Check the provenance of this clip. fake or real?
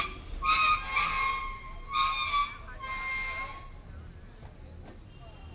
real